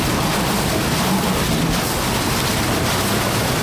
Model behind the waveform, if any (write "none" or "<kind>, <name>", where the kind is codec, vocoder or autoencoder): none